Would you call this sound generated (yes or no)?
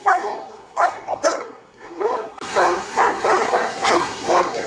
yes